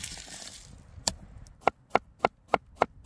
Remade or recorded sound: recorded